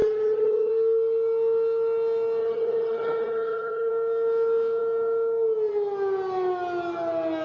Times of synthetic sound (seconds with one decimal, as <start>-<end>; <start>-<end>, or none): 0.0-0.7; 2.4-3.9